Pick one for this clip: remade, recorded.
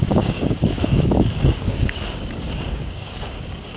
remade